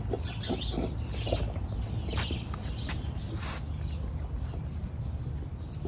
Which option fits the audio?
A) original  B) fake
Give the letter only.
A